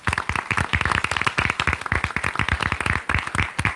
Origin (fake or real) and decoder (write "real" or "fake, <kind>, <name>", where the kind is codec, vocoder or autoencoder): real